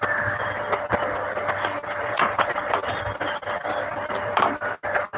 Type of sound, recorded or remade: recorded